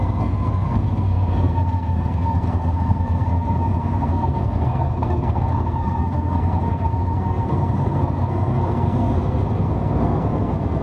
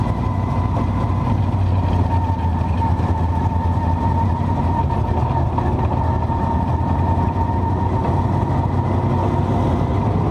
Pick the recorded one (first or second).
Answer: second